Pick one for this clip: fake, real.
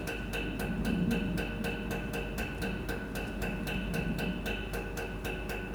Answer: real